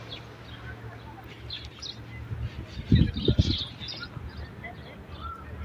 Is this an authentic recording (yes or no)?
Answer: yes